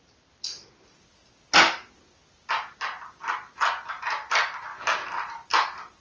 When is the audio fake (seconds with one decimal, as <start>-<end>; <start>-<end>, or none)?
none